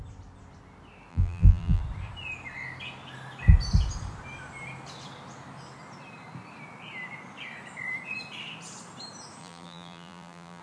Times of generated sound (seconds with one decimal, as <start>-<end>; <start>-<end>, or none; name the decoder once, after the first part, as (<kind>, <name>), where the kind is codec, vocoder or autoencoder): 1.1-1.8 (vocoder, BigVGAN v2); 9.4-10.6